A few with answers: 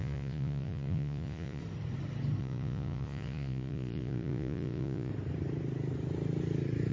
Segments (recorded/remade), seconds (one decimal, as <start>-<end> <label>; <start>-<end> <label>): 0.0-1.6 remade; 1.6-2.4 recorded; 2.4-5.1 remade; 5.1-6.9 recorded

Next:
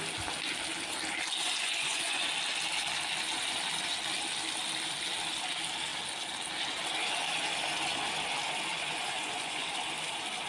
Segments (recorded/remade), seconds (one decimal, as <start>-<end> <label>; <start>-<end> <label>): 0.0-1.4 recorded; 1.4-2.3 remade; 2.3-8.7 recorded; 8.7-9.7 remade; 9.7-10.5 recorded

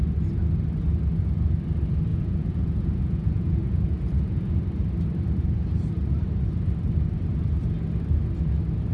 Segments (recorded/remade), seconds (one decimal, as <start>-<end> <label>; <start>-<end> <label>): 0.0-2.1 recorded; 2.1-4.5 remade; 4.5-8.9 recorded